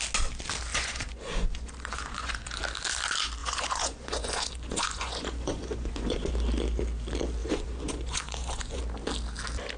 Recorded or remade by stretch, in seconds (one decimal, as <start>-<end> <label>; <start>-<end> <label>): 0.0-0.7 recorded; 0.7-2.6 remade; 2.6-3.4 recorded; 3.4-6.3 remade; 6.3-7.4 recorded; 7.4-8.8 remade; 8.8-9.8 recorded